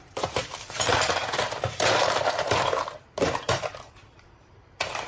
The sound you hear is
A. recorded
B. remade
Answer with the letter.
B